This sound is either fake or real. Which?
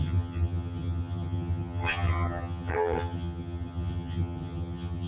fake